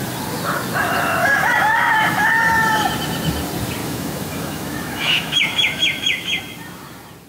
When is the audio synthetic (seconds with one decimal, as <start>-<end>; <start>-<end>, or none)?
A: 1.2-2.3; 3.8-6.4